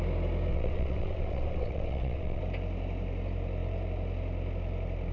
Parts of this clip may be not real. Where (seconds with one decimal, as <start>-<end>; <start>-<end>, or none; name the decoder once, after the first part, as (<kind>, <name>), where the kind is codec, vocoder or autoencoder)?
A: 0.5-2.4 (vocoder, WaveNeXt)

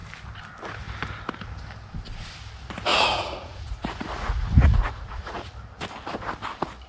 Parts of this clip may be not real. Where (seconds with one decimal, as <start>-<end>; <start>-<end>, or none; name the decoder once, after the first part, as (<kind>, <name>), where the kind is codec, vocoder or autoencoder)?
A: 2.9-5.5 (vocoder, Vocos)

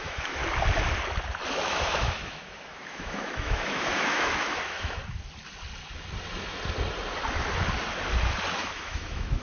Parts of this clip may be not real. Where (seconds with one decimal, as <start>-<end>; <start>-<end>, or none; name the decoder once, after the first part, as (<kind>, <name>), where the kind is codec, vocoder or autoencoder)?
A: 0.0-0.4 (autoencoder, DAC-VAE); 1.5-5.0; 8.5-9.4

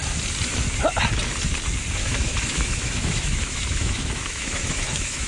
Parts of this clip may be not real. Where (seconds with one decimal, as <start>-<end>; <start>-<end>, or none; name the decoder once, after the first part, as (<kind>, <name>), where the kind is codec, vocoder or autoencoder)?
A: 2.0-5.3 (autoencoder, DAC-VAE)

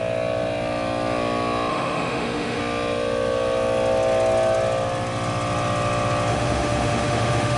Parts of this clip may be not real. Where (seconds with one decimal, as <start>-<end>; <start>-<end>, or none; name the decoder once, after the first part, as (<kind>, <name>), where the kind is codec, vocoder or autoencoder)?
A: 1.7-2.6 (autoencoder, DAC-VAE); 6.3-7.6